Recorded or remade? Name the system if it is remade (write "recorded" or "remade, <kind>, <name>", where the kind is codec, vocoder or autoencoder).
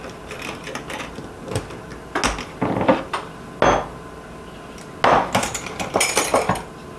recorded